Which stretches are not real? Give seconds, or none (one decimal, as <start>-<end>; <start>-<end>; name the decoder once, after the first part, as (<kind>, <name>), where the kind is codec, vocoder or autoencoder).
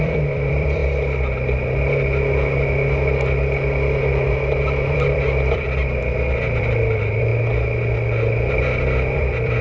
0.0-0.8 (vocoder, BigVGAN v2); 4.9-5.8; 6.6-7.3; 8.5-9.6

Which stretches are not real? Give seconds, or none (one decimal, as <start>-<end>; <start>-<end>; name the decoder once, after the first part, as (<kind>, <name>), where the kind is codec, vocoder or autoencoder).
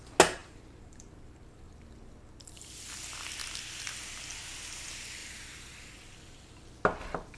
0.4-2.1 (vocoder, BigVGAN v2); 5.2-6.5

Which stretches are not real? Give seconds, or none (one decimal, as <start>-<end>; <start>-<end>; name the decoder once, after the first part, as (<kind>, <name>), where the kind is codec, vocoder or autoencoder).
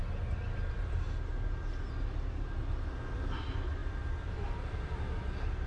none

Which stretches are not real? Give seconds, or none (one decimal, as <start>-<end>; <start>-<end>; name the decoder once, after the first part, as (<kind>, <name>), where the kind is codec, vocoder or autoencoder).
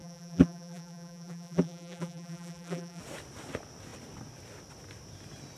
0.0-3.0 (vocoder, BigVGAN v2)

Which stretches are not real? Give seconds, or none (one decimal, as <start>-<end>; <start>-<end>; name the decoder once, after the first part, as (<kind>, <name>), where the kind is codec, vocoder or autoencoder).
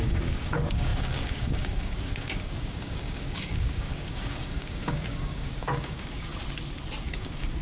0.0-6.3 (codec, DAC); 7.0-7.6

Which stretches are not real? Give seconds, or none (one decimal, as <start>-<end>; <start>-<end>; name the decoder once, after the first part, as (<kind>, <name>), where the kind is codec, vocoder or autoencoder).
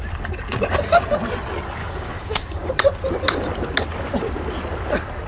1.8-2.7 (codec, DAC)